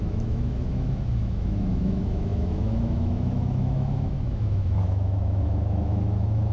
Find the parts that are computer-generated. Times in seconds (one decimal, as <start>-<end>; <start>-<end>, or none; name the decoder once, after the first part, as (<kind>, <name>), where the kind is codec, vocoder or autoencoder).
0.0-6.5 (autoencoder, DAC-VAE)